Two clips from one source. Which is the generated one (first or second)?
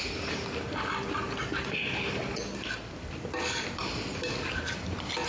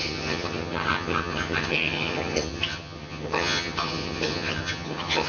second